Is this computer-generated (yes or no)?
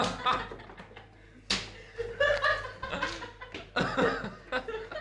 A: no